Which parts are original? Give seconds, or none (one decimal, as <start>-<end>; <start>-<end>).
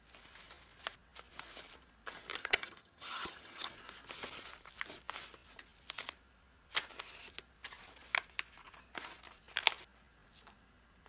0.0-2.4; 3.7-11.1